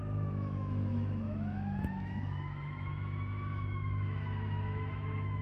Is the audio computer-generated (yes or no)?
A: yes